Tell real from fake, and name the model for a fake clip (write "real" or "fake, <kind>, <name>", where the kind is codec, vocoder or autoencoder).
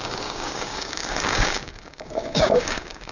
fake, codec, DAC